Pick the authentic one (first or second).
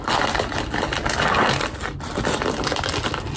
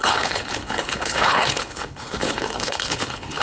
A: first